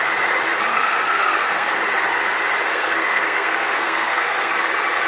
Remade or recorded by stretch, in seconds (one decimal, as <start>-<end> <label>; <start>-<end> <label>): 0.0-0.7 recorded; 0.7-1.8 remade; 1.8-2.7 recorded; 2.7-4.5 remade; 4.5-5.1 recorded